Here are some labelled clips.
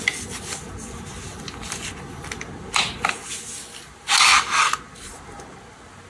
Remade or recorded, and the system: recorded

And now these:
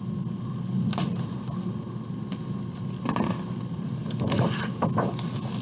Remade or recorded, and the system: recorded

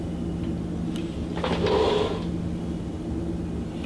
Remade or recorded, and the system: recorded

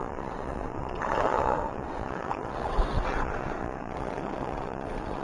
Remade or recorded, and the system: remade, vocoder, WaveNeXt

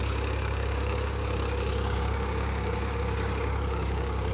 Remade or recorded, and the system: remade, codec, DAC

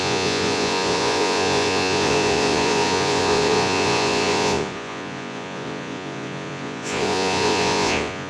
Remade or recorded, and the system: remade, vocoder, Vocos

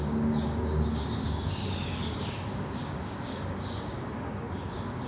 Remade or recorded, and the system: remade, codec, DAC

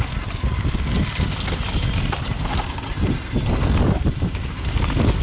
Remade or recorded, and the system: recorded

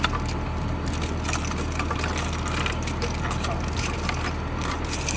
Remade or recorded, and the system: recorded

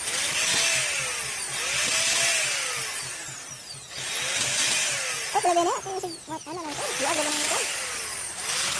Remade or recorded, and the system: recorded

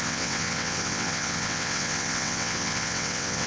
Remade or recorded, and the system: remade, vocoder, WaveNeXt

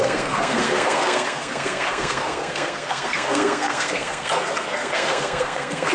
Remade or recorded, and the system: remade, codec, SNAC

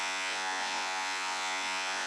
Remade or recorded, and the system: remade, vocoder, Vocos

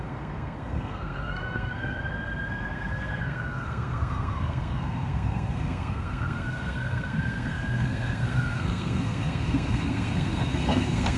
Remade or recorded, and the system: remade, codec, SNAC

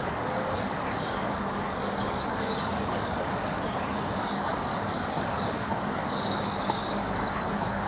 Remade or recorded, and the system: remade, codec, DAC